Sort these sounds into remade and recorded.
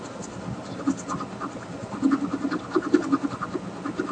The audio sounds recorded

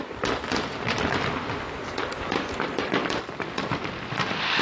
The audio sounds recorded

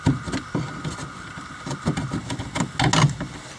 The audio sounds recorded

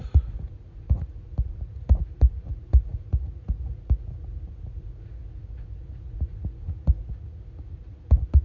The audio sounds remade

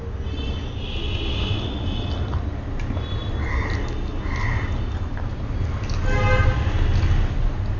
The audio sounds recorded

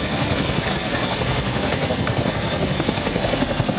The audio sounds remade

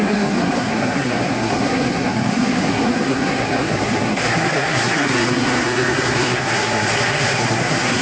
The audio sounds remade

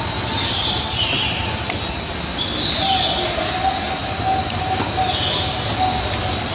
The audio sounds recorded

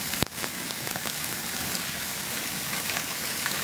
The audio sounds remade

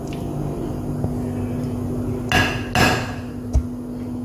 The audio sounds recorded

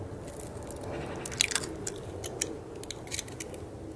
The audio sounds recorded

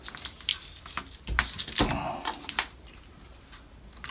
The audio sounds recorded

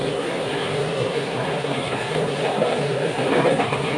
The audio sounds remade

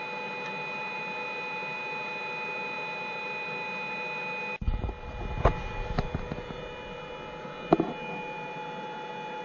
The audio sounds recorded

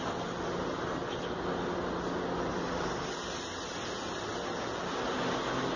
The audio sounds recorded